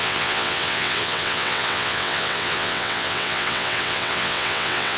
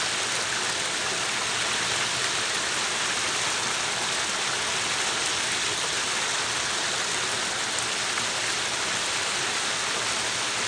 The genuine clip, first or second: second